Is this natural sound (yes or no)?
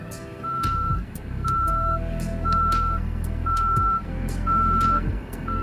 no